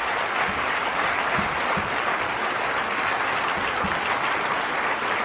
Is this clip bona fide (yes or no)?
yes